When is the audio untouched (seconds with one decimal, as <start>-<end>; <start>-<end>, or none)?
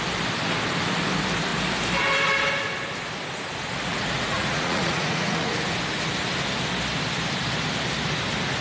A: 0.0-3.9; 5.5-8.6